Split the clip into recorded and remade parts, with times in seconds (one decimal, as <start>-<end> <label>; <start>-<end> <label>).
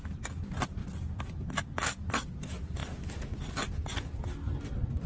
0.0-5.1 recorded